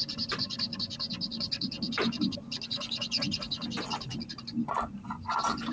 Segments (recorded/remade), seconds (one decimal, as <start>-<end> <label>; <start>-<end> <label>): 0.0-5.7 recorded